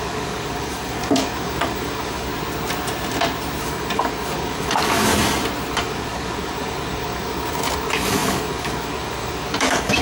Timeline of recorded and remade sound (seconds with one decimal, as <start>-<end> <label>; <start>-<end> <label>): 0.0-2.3 remade; 2.3-3.6 recorded; 3.6-5.1 remade; 5.1-5.7 recorded; 5.7-10.0 remade